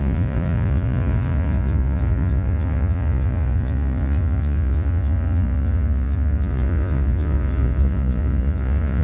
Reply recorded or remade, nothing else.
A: remade